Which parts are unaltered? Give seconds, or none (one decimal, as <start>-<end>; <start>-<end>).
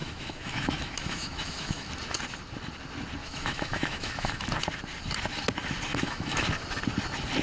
1.9-3.2; 4.4-5.9; 6.4-7.4